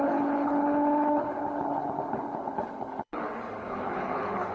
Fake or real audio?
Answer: fake